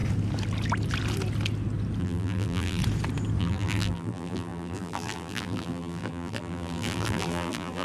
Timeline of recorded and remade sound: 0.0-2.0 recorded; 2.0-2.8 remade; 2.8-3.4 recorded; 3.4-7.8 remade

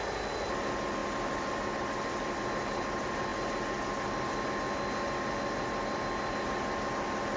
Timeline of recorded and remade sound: 0.0-7.4 recorded

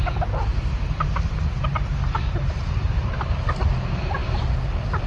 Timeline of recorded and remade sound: 0.0-0.5 recorded; 0.5-3.6 remade; 3.6-5.1 recorded

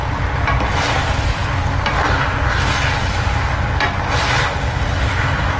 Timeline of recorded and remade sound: 0.0-1.4 remade; 1.4-4.4 recorded; 4.4-5.6 remade

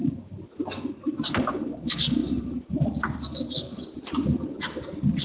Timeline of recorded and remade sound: 0.0-2.2 recorded; 2.2-5.2 remade

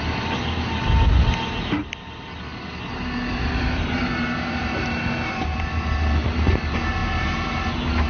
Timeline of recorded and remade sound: 0.0-7.0 recorded; 7.0-7.6 remade; 7.6-8.1 recorded

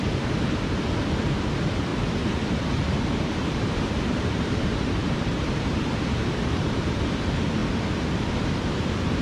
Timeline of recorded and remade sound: 0.0-0.4 recorded; 0.4-1.0 remade; 1.0-1.9 recorded; 1.9-7.0 remade; 7.0-9.2 recorded

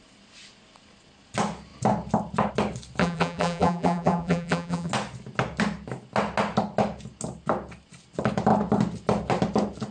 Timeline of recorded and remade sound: 0.0-3.0 recorded; 3.0-4.9 remade; 4.9-9.9 recorded